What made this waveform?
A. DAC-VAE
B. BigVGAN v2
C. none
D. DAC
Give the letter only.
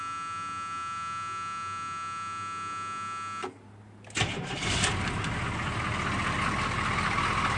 C